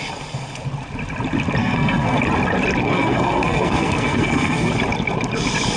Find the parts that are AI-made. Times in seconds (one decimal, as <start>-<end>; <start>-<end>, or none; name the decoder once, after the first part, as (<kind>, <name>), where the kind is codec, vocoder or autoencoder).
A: 1.6-2.2 (codec, SNAC); 2.8-4.7